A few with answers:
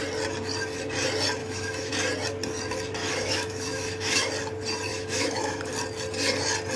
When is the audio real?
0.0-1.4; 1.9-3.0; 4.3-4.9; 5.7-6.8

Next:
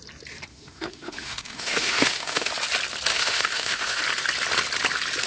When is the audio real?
0.0-0.5; 2.5-3.1; 4.0-5.3

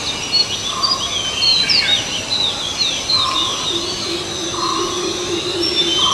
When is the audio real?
0.0-6.1

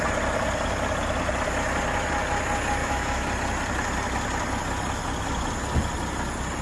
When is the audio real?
0.0-2.8; 3.3-6.6

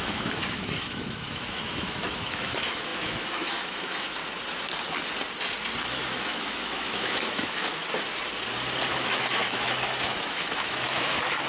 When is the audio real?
4.2-5.9; 7.8-8.9

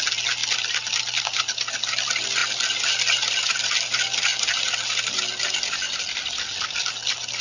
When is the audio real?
0.0-7.4

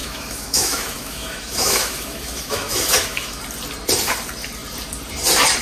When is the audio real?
3.4-5.6

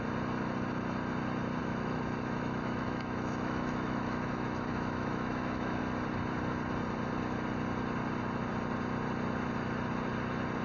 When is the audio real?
0.0-1.6; 5.8-10.6